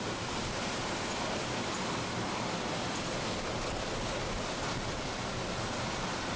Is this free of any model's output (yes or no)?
yes